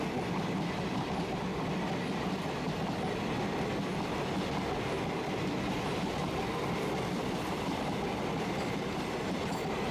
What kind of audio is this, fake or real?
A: real